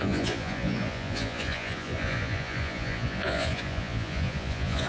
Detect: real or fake fake